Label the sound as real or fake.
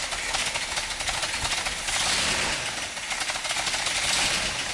real